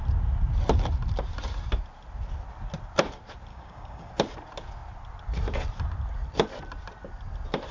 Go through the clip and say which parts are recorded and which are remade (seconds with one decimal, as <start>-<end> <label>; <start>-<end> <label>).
0.0-3.5 recorded; 3.5-4.1 remade; 4.1-7.7 recorded